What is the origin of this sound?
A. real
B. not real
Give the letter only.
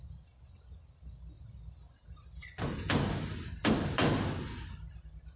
A